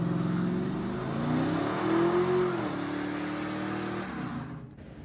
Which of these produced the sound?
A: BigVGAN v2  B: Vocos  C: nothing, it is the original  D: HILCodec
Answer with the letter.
C